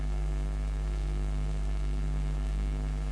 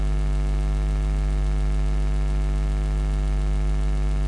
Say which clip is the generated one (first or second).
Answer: first